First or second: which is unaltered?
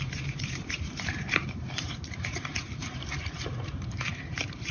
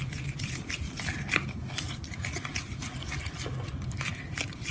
second